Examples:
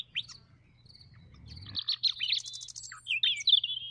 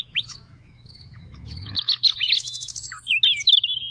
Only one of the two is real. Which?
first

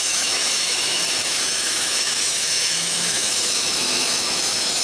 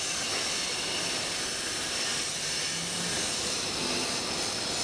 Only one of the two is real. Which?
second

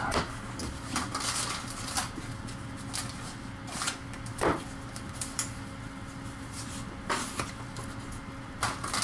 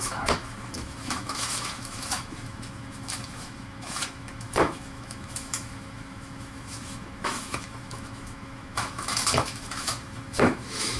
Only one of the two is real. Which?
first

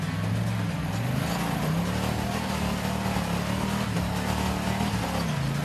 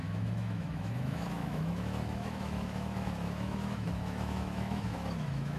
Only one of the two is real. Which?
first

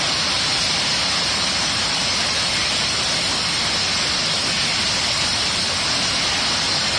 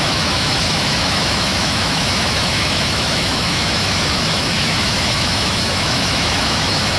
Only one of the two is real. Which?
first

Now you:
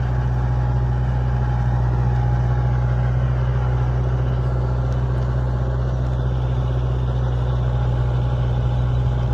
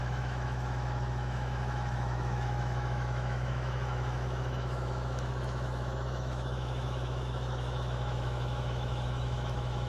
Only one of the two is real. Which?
first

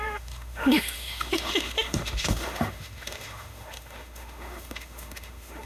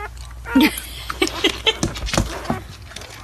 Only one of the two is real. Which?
second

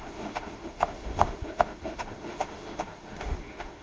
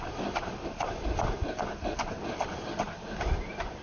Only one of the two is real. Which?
second